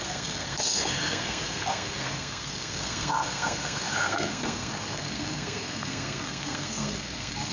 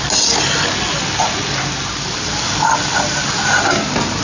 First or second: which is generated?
first